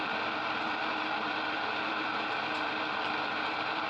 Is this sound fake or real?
fake